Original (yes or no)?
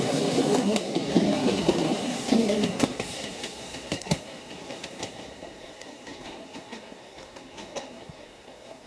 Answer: no